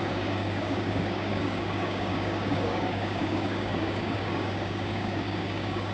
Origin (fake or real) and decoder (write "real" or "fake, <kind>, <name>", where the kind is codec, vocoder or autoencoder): fake, codec, DAC